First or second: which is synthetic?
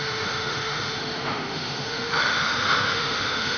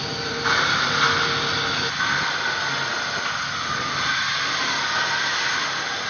first